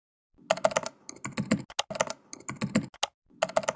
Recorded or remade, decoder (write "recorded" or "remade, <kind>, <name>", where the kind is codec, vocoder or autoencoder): recorded